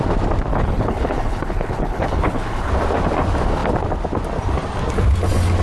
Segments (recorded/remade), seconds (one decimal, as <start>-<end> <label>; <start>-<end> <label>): 0.0-0.5 recorded; 0.5-2.7 remade; 2.7-5.6 recorded